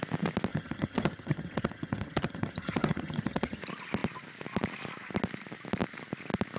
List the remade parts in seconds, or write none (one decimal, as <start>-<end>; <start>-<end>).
0.5-3.6